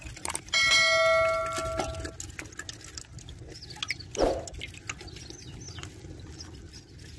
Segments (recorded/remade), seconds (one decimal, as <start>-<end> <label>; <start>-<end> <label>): 0.0-7.2 recorded